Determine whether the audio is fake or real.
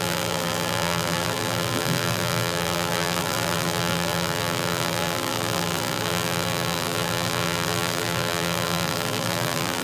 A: fake